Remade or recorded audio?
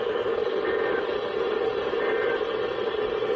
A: remade